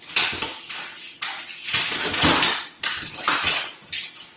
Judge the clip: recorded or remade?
recorded